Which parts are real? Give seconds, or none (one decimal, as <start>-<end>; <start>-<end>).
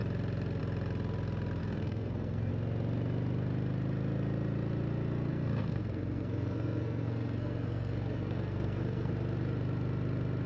0.0-1.6; 2.5-5.3; 9.1-10.5